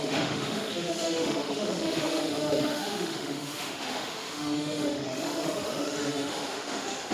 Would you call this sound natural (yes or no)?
no